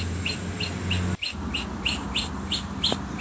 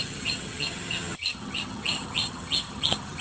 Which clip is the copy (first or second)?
second